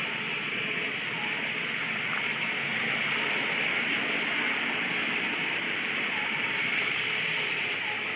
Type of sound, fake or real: real